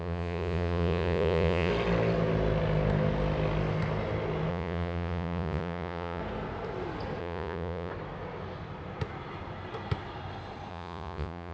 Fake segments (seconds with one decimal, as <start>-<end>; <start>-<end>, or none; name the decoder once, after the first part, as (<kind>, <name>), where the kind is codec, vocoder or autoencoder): 0.0-1.7 (vocoder, Vocos); 4.5-6.2; 7.2-7.9; 10.7-11.5